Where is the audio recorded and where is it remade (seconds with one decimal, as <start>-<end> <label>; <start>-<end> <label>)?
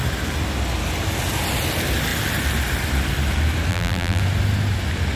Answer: 0.0-3.7 recorded; 3.7-4.2 remade; 4.2-5.2 recorded